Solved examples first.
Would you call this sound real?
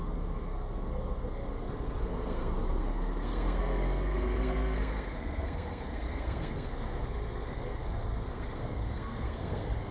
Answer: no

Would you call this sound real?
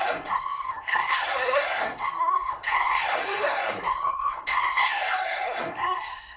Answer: no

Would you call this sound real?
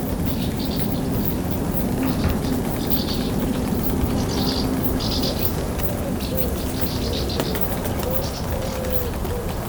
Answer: yes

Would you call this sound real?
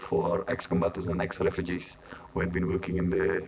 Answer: no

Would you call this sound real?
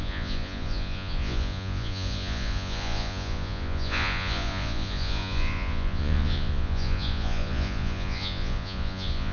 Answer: no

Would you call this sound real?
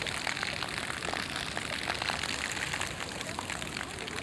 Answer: yes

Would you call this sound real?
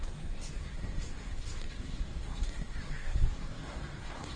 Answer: no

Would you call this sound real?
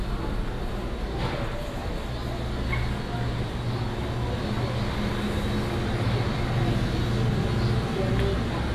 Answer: yes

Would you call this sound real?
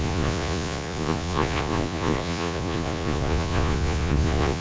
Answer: no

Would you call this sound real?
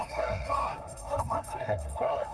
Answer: no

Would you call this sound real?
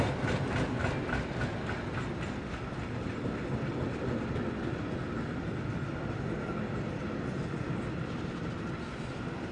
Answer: yes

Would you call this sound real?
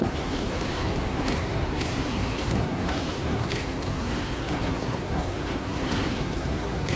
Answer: no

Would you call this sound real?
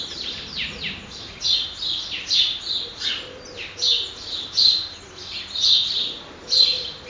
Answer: yes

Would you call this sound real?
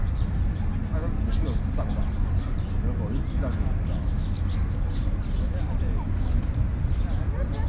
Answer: yes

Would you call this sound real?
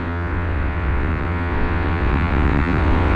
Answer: no